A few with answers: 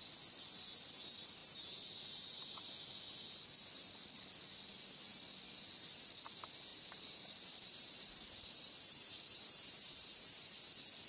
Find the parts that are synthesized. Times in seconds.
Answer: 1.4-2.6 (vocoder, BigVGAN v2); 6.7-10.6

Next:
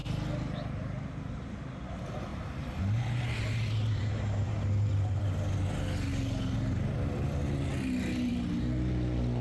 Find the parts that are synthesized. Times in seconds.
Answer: 2.3-5.3 (vocoder, BigVGAN v2)

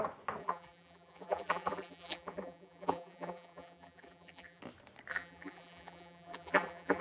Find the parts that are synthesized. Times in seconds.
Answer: 0.4-4.6 (vocoder, BigVGAN v2); 5.1-7.0